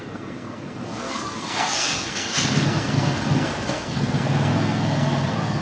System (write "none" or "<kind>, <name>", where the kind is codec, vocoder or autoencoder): codec, SNAC